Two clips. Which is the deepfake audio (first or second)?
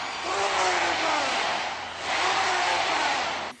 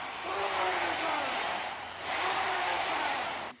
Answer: second